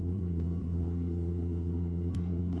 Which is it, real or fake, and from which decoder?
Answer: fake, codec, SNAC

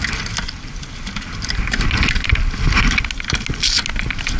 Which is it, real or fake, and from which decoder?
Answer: real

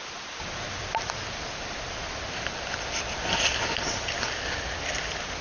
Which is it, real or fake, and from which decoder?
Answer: real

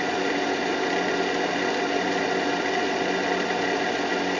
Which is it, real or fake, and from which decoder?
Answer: real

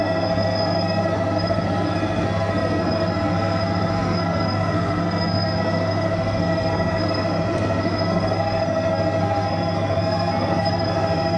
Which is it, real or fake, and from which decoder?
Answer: fake, codec, SNAC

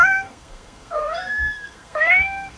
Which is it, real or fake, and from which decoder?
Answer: fake, codec, SNAC